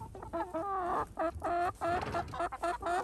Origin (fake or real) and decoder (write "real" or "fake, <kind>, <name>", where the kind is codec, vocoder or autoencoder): real